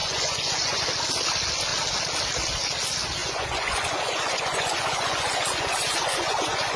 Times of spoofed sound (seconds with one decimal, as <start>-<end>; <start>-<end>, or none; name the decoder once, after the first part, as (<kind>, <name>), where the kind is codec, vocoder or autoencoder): 0.0-0.8 (vocoder, Vocos); 3.2-6.8